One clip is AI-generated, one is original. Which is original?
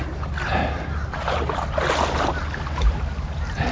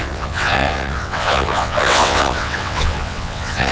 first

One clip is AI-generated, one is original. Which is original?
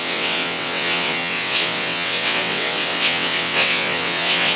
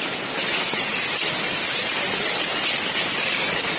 second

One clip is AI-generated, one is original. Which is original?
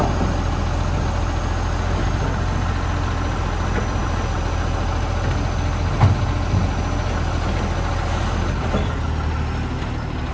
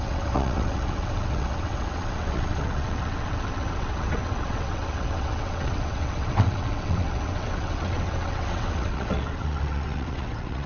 first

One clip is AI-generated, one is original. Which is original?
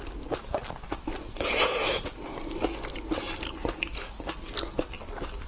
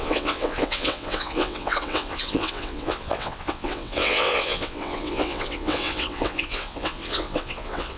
first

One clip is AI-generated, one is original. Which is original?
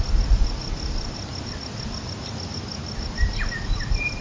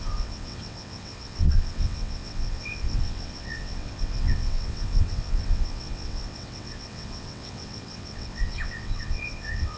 first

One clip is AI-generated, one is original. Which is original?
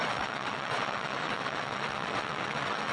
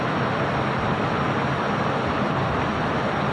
second